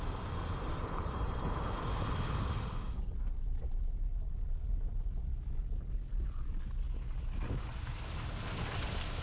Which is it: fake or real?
real